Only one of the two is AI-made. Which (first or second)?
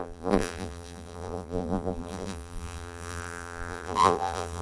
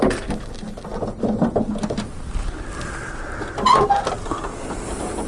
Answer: first